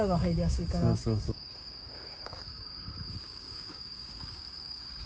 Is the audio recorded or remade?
remade